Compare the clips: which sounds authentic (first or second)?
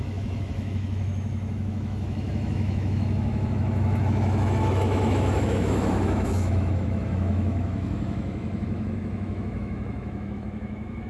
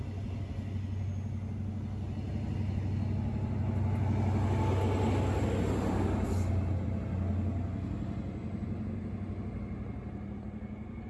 second